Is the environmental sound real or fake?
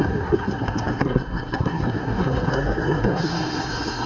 fake